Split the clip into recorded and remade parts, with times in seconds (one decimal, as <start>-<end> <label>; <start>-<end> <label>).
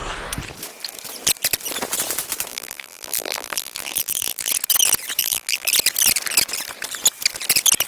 0.0-2.5 recorded; 2.5-4.5 remade; 4.5-5.2 recorded; 5.2-5.7 remade; 5.7-7.9 recorded